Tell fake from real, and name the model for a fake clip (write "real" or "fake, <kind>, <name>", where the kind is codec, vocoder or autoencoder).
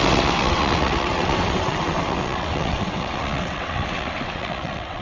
fake, vocoder, WaveNeXt